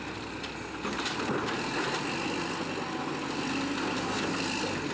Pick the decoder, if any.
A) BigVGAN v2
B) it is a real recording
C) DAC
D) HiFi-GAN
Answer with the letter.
B